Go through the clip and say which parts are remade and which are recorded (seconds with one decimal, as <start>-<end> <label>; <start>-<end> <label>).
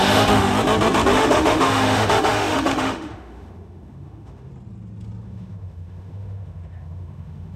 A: 0.0-0.5 remade; 0.5-1.1 recorded; 1.1-4.5 remade; 4.5-5.2 recorded; 5.2-7.6 remade